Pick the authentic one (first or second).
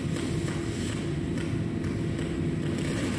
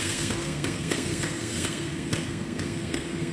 first